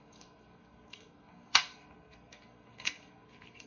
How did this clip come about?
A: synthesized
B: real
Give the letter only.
A